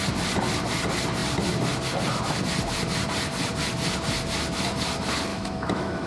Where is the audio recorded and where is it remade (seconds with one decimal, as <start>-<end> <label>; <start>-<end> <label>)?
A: 0.0-5.3 recorded; 5.3-6.1 remade